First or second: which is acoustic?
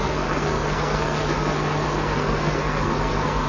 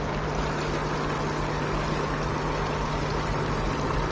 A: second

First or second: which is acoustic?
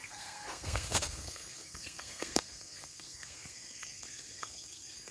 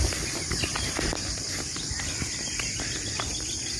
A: second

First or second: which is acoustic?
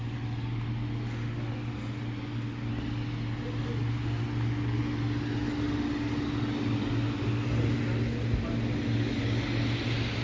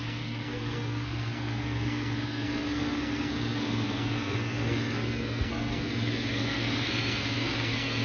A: first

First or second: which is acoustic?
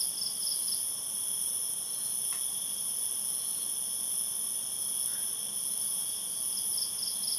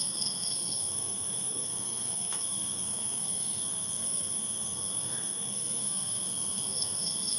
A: first